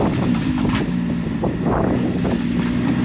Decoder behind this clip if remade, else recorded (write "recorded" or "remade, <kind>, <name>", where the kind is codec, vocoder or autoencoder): recorded